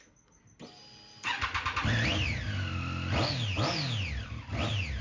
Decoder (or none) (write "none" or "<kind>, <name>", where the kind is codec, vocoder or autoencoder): none